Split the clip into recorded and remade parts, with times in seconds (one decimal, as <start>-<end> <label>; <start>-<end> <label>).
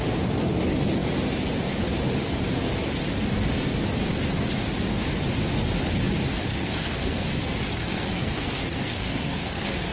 0.0-6.4 recorded; 6.4-9.9 remade